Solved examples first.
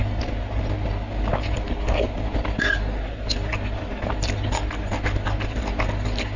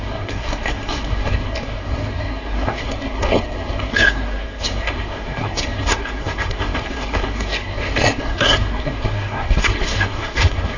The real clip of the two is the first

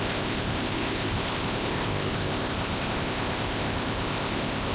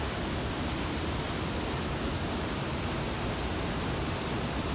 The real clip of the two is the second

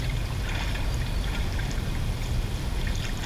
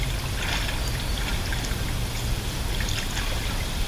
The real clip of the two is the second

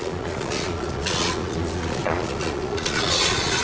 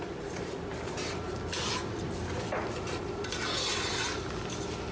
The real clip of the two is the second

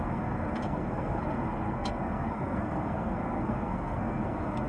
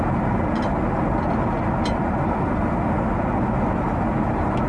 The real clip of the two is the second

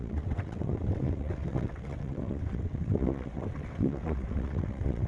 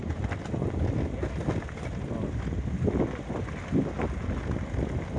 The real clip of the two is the second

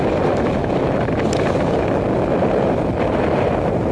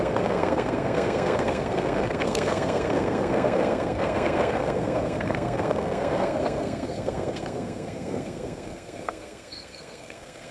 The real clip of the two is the first